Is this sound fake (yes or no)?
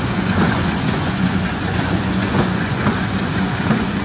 yes